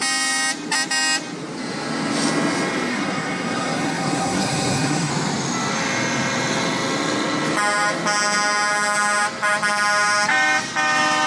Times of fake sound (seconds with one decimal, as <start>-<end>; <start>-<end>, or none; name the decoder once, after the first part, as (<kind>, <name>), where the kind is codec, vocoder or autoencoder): 2.9-5.1 (codec, SNAC)